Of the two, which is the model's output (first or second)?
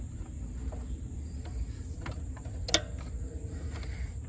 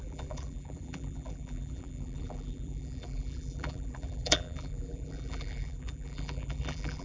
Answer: second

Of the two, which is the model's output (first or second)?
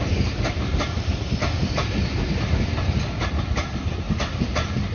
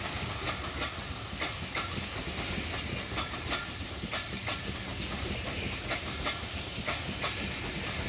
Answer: first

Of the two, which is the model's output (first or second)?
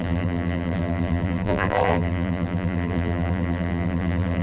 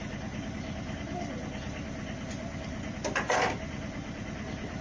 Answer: first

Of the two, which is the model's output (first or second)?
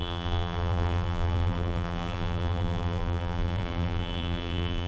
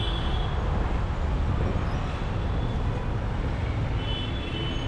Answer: first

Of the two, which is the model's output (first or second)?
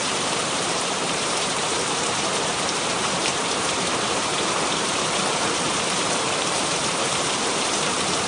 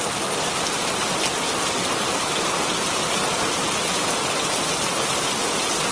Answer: first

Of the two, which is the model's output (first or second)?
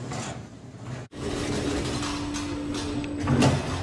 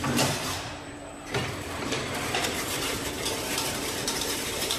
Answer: second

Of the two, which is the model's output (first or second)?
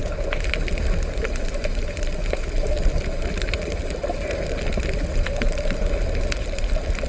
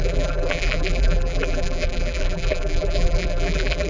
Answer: second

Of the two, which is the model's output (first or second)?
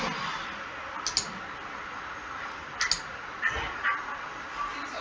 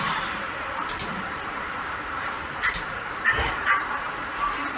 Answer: second